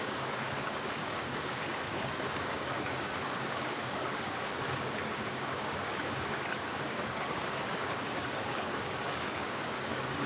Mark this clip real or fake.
fake